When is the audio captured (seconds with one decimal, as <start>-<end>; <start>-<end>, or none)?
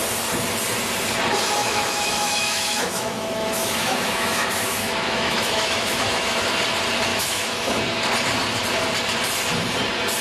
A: 0.0-1.6; 6.4-7.1; 7.8-10.2